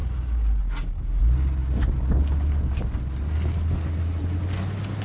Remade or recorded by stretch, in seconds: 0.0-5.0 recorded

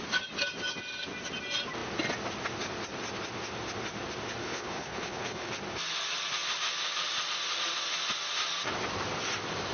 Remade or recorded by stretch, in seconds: 0.0-4.4 recorded; 4.4-5.5 remade; 5.5-9.7 recorded

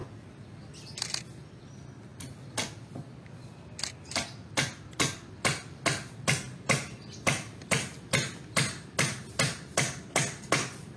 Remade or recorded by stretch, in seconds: 0.0-11.0 recorded

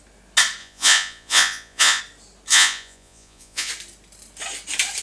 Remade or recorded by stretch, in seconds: 0.0-0.6 recorded; 0.6-2.0 remade; 2.0-2.5 recorded; 2.5-3.7 remade; 3.7-5.0 recorded

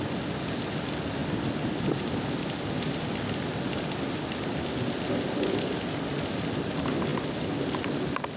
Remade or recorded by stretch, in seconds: 0.0-8.4 recorded

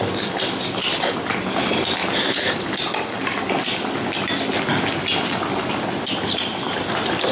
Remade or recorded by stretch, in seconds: 0.0-7.3 recorded